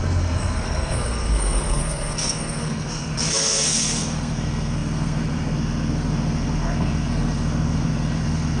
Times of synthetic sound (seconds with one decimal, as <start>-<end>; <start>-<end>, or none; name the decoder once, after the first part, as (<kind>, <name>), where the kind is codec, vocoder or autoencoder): 0.0-8.6 (codec, SNAC)